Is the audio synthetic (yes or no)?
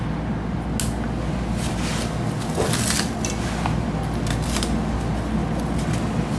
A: no